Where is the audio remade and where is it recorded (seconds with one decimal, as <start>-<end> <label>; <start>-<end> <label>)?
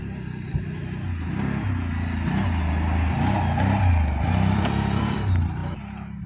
0.0-0.8 remade; 0.8-4.3 recorded; 4.3-5.6 remade; 5.6-6.3 recorded